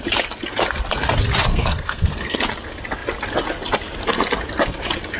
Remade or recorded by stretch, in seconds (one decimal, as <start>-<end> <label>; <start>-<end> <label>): 0.0-1.5 recorded; 1.5-2.4 remade; 2.4-5.2 recorded